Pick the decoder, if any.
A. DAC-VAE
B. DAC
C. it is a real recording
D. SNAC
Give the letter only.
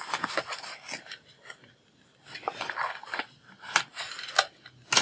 C